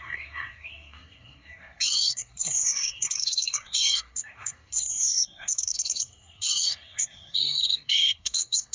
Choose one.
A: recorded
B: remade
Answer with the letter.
B